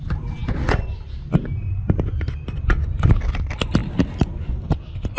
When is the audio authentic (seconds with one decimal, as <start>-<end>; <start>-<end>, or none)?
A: 0.0-5.2